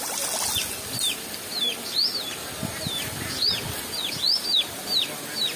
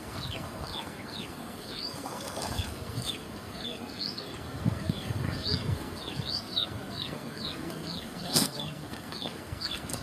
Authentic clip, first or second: first